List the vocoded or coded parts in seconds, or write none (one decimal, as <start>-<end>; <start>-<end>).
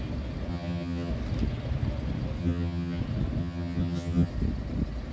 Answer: 0.5-1.1; 2.4-3.0; 3.4-4.3